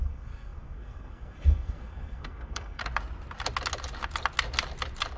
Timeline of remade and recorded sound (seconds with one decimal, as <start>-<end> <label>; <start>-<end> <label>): 0.0-2.8 remade; 2.8-5.2 recorded